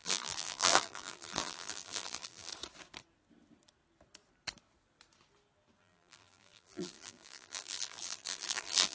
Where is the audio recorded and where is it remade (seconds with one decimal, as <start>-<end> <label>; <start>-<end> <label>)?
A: 0.0-2.5 remade; 2.5-5.8 recorded; 5.8-8.9 remade